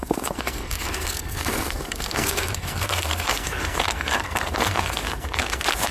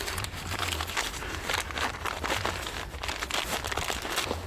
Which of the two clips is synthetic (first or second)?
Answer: first